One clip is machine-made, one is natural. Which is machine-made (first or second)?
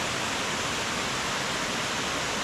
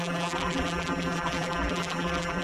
second